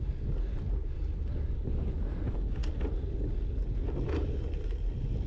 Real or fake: real